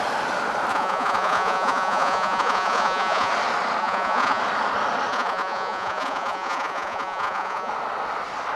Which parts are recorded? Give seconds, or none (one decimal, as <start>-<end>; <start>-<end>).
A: 0.0-0.7; 3.3-3.8; 4.4-5.1; 7.7-8.6